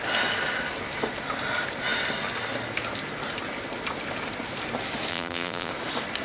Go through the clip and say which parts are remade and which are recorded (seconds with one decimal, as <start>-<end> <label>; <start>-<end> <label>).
0.0-5.1 recorded; 5.1-5.7 remade; 5.7-6.2 recorded